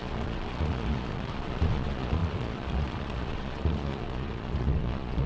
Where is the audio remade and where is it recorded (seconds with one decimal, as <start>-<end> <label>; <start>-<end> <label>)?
0.0-5.3 remade